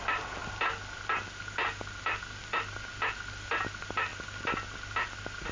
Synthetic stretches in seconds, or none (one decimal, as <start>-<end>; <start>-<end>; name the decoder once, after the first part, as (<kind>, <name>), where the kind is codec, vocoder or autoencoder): none

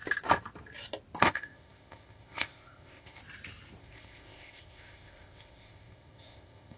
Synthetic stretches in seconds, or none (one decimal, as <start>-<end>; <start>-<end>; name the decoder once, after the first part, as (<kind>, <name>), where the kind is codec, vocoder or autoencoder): 1.2-3.2 (codec, ZipCodec); 3.8-6.8

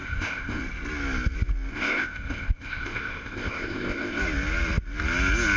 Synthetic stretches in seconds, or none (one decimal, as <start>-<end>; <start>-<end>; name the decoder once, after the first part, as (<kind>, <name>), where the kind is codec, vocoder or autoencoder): 0.0-0.6 (codec, ZipCodec); 1.7-4.2